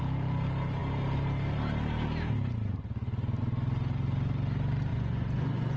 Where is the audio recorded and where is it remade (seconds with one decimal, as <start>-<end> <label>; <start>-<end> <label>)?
0.0-4.9 recorded; 4.9-5.8 remade